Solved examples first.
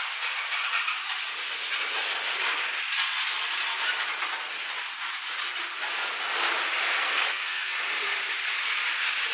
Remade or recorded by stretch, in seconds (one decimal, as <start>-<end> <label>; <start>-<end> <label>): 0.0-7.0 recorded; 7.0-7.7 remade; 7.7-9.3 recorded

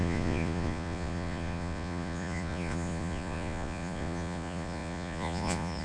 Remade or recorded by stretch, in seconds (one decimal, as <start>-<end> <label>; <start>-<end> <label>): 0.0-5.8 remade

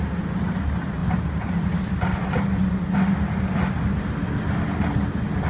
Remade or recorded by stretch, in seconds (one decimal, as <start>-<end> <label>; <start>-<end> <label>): 0.0-5.5 recorded

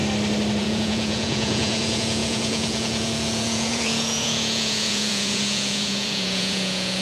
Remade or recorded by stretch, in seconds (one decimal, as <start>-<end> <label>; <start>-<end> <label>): 0.0-0.6 recorded; 0.6-7.0 remade

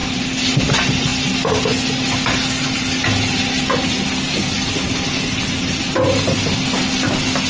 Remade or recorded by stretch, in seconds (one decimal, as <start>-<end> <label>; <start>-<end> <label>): 0.0-7.5 recorded

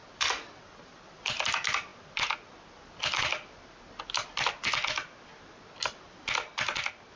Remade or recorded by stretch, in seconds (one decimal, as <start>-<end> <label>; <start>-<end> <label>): 0.0-7.2 recorded